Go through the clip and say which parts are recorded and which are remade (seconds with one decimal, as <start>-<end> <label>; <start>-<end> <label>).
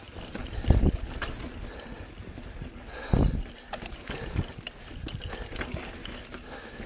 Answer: 0.0-6.0 recorded; 6.0-6.9 remade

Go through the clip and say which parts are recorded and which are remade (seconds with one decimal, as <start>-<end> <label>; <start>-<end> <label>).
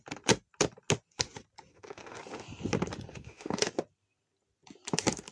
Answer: 0.0-1.7 recorded; 1.7-2.2 remade; 2.2-3.1 recorded; 3.1-3.7 remade; 3.7-5.3 recorded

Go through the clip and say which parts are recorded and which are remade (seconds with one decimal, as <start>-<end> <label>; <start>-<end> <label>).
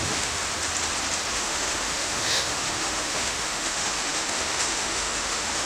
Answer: 0.0-0.4 remade; 0.4-1.3 recorded; 1.3-5.7 remade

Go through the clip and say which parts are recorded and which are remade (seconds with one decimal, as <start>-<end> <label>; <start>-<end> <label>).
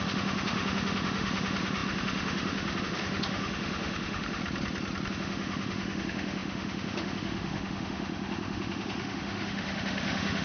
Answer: 0.0-4.4 remade; 4.4-5.1 recorded; 5.1-10.4 remade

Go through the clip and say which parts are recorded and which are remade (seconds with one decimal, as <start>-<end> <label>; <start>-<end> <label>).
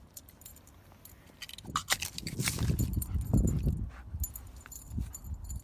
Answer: 0.0-5.6 recorded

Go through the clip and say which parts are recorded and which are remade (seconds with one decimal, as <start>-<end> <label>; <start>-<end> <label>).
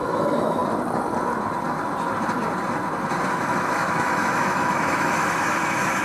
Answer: 0.0-0.6 remade; 0.6-3.3 recorded; 3.3-6.0 remade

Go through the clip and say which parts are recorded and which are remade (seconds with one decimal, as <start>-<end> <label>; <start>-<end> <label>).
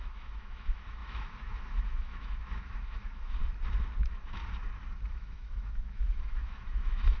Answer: 0.0-3.4 remade; 3.4-4.0 recorded; 4.0-4.4 remade; 4.4-5.1 recorded; 5.1-7.2 remade